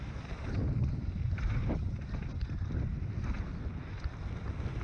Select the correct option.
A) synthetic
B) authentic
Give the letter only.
B